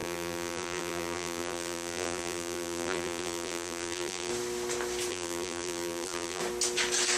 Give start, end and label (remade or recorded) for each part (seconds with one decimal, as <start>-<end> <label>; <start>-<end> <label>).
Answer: 0.0-4.3 remade; 4.3-5.1 recorded; 5.1-6.4 remade; 6.4-7.2 recorded